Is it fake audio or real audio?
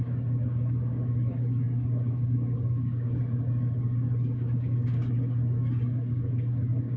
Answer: fake